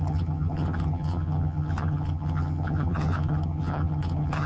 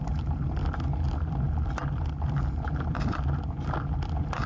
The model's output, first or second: first